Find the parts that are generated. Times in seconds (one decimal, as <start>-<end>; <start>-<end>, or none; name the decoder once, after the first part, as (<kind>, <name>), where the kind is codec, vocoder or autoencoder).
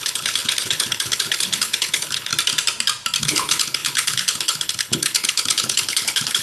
0.0-2.3 (codec, HILCodec); 3.2-6.4